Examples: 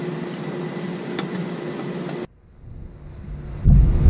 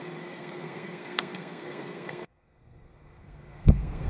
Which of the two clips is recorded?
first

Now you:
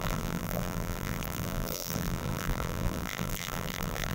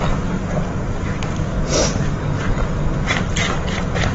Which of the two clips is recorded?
second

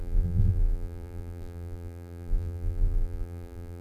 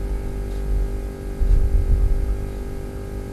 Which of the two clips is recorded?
second